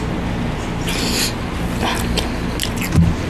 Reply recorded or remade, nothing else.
recorded